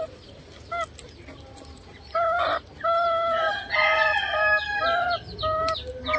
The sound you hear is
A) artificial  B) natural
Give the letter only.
B